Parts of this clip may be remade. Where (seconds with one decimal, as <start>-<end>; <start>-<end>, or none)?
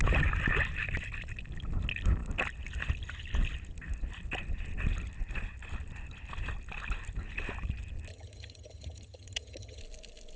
8.1-9.8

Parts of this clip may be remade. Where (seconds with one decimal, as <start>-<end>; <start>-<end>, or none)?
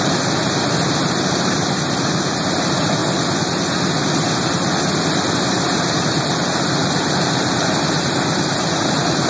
0.0-3.0; 5.3-9.3